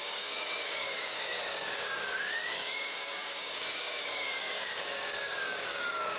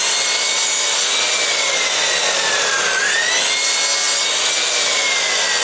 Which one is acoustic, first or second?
second